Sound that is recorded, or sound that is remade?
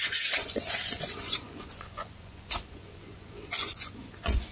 remade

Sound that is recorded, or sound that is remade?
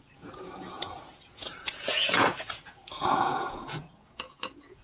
remade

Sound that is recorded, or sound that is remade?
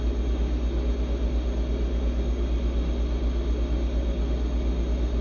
recorded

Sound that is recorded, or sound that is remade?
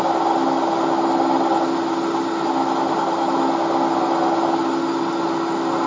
recorded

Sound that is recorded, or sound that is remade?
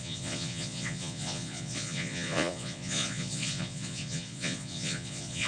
remade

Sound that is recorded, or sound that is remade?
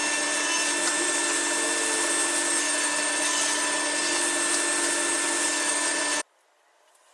recorded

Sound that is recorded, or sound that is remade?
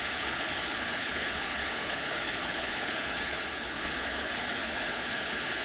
remade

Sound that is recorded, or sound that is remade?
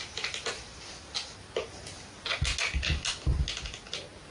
recorded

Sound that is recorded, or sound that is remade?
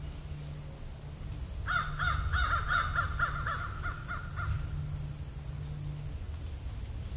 recorded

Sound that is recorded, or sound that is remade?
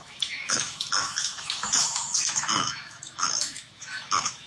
remade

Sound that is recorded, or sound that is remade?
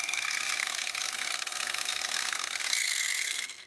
remade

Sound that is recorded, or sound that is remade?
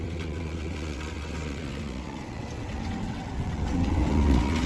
remade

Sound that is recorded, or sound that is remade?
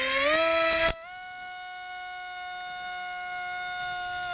recorded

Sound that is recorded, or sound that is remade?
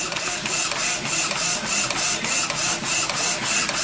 recorded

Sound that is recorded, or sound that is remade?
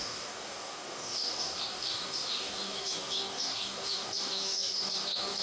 remade